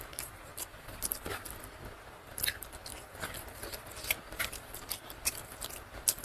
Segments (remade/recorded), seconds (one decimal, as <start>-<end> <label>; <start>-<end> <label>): 0.0-0.5 remade; 0.5-4.2 recorded; 4.2-6.2 remade